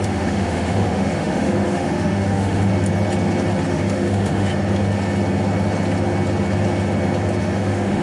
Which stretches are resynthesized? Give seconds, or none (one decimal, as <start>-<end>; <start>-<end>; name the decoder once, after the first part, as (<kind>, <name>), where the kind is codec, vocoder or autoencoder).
0.0-2.7 (autoencoder, DAC-VAE); 3.7-4.5; 7.4-8.0